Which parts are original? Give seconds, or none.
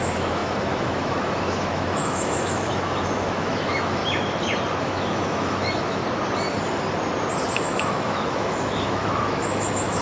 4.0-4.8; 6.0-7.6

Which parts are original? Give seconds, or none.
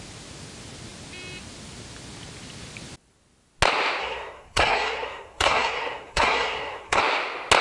0.0-4.0; 7.0-7.6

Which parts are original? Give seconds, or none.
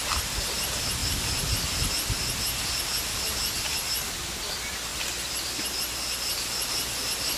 0.0-7.4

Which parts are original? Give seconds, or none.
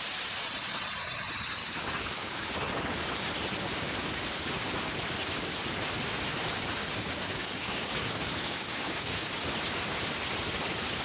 0.0-1.6; 2.8-6.8; 9.3-11.0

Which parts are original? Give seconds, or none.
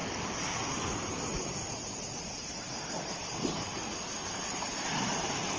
0.0-4.2; 4.7-5.6